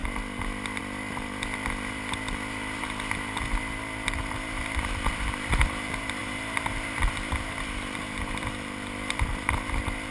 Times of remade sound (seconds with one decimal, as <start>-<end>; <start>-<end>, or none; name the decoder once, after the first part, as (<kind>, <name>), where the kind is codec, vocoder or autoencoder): 0.8-10.1 (vocoder, BigVGAN v2)